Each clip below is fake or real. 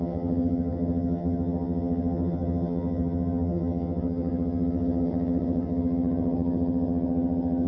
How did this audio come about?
fake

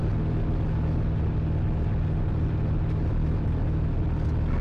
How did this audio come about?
real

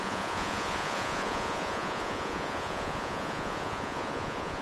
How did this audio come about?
fake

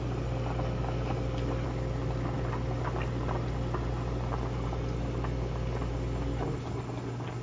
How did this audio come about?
real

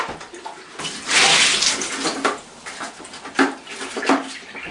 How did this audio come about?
real